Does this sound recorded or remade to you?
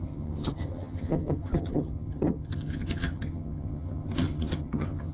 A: remade